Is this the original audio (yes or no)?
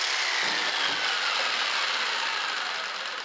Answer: yes